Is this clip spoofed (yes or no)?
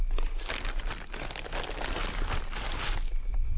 no